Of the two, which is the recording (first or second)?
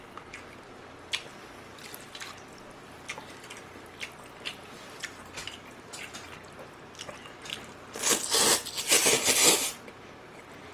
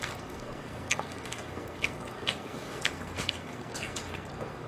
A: first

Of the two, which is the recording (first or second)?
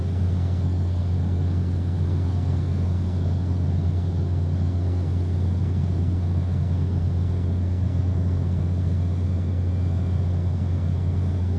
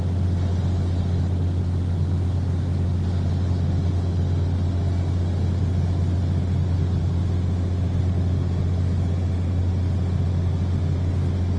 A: second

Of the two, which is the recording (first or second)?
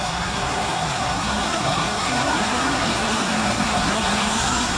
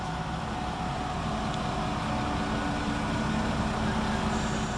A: second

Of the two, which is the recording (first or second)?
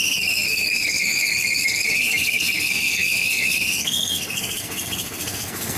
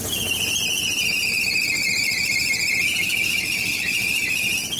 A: second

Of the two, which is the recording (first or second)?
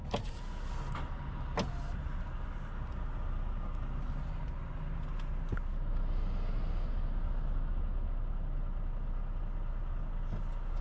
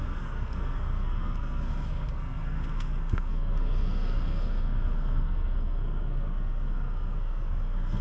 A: first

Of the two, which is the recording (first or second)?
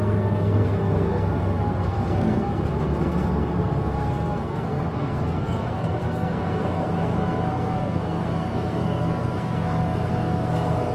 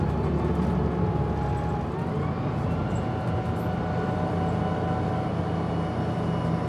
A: second